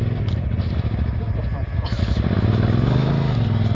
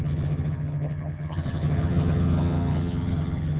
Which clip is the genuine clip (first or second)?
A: first